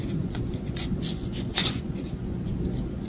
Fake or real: fake